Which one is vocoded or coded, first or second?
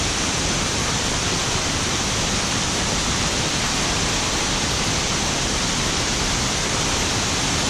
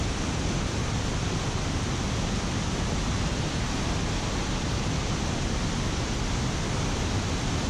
first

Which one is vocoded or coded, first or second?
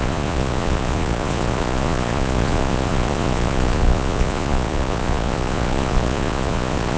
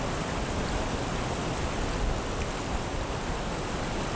first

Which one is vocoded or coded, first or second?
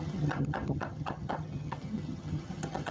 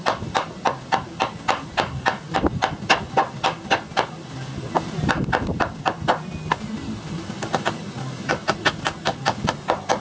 first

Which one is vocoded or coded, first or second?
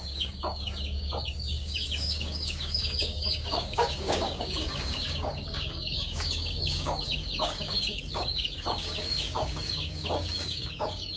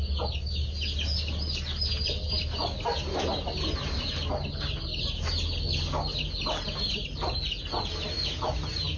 first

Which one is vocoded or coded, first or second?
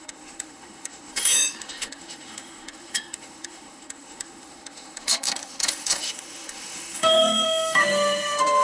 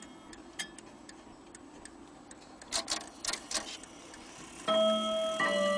first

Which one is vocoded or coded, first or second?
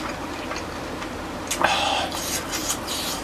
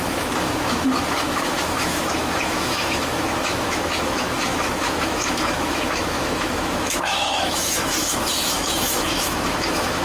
second